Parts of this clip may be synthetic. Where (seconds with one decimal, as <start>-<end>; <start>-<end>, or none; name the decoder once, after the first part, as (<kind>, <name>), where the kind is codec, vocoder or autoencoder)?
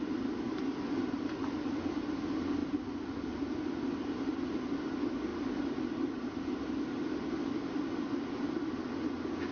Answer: none